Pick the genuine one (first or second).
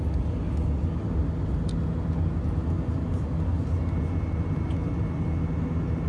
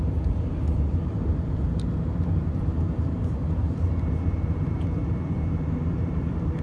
first